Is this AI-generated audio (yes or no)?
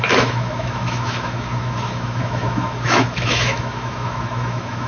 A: yes